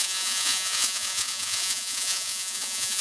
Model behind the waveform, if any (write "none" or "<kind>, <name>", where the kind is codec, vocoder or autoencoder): vocoder, Vocos